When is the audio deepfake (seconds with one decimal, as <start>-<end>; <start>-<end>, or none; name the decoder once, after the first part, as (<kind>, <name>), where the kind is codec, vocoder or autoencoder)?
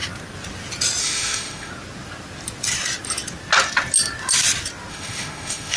1.0-1.7 (autoencoder, DAC-VAE); 4.9-5.8